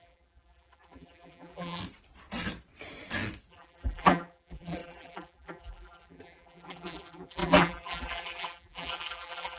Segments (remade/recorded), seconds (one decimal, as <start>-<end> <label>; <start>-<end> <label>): 0.0-1.8 remade; 1.8-3.5 recorded; 3.5-9.6 remade